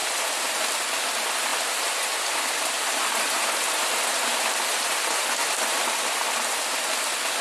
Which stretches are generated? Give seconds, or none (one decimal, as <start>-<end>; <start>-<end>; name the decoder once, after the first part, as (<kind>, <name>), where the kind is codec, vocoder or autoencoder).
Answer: 0.0-0.7 (vocoder, BigVGAN v2); 1.5-5.8